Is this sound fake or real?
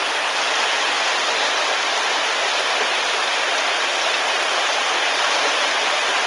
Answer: real